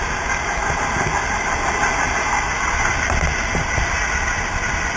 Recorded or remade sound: recorded